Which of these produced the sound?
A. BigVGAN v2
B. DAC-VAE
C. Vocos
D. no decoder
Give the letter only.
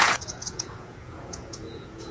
C